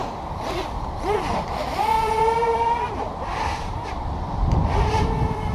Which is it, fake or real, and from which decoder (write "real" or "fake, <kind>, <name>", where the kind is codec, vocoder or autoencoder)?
fake, vocoder, BigVGAN v2